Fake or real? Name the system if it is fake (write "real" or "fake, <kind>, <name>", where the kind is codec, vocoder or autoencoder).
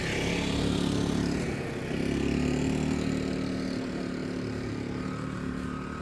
real